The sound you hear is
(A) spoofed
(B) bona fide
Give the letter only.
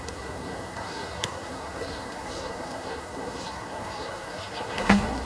A